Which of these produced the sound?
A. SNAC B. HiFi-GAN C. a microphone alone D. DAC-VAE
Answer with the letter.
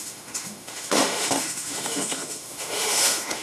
D